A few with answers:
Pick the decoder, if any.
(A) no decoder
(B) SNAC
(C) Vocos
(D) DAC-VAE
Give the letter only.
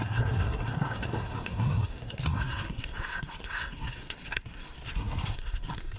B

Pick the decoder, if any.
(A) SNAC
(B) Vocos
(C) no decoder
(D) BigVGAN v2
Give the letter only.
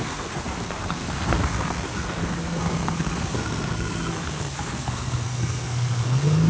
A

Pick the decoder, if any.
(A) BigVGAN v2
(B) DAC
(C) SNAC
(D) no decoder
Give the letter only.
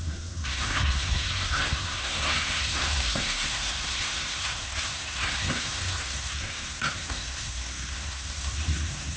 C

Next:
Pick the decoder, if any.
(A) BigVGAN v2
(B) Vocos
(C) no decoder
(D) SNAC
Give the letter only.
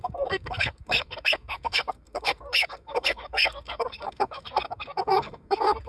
D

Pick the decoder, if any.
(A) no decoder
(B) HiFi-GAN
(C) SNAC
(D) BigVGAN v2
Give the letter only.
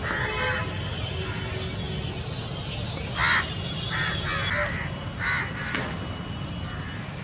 A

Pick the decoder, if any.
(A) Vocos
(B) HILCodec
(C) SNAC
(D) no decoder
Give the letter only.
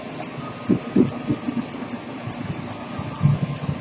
D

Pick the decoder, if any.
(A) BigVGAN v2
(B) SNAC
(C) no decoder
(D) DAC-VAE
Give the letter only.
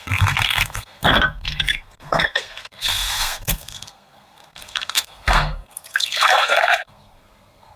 B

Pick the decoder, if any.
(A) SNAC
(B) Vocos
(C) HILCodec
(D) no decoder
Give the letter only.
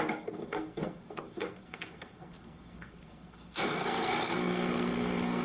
A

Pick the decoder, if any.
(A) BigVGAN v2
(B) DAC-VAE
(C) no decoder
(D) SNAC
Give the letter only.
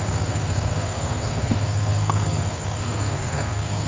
D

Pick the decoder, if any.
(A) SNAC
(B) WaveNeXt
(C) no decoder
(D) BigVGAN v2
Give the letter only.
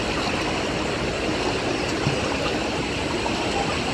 C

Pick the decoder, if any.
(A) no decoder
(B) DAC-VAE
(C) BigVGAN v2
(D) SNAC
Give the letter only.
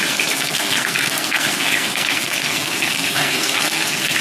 D